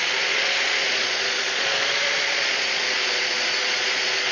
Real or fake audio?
fake